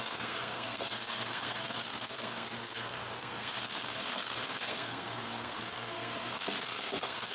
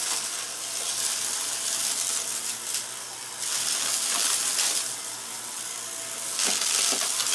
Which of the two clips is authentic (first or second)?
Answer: second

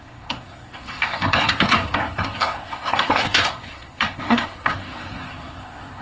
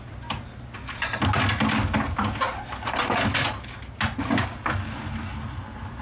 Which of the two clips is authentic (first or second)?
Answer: second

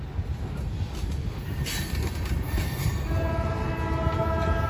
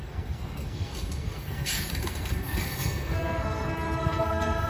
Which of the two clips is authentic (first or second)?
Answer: first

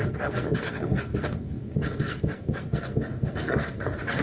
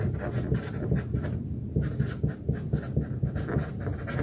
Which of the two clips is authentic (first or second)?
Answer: second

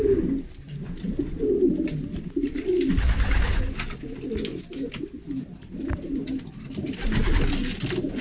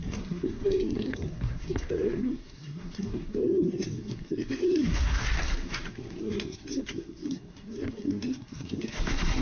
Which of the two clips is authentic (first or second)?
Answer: first